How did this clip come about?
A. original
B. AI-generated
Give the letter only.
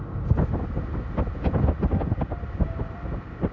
A